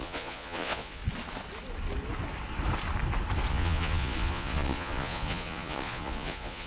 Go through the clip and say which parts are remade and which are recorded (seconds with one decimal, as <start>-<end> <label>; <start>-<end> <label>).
0.0-1.0 remade; 1.0-3.5 recorded; 3.5-6.7 remade